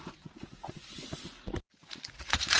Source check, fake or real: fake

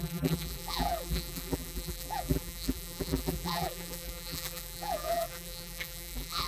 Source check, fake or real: fake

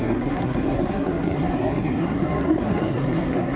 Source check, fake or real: fake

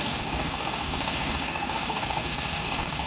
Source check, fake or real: fake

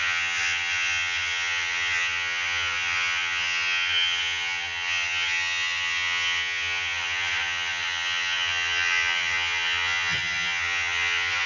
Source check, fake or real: fake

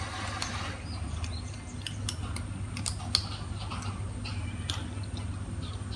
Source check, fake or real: real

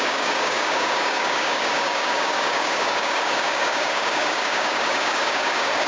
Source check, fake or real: fake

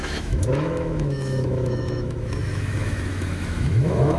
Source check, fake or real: fake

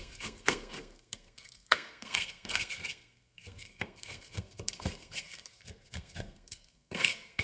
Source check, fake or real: fake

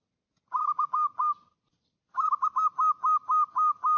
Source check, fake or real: real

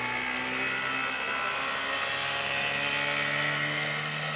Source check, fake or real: real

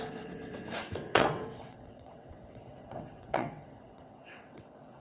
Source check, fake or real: fake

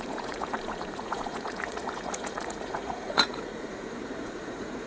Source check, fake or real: fake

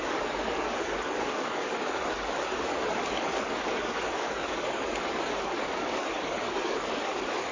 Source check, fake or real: fake